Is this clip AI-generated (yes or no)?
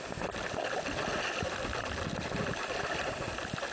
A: no